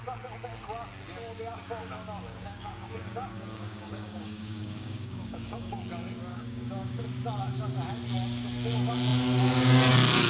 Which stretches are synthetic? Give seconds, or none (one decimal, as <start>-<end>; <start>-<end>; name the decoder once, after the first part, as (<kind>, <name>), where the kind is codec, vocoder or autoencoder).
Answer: 2.3-5.8 (codec, DAC); 6.3-7.0